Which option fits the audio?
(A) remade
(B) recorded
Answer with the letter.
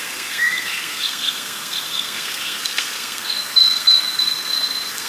A